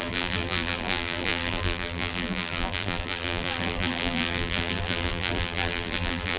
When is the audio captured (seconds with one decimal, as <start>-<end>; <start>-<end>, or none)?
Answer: none